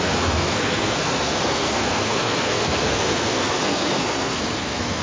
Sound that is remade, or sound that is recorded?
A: remade